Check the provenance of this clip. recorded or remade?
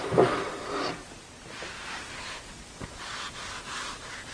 recorded